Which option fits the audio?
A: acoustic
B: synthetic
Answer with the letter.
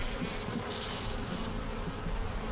A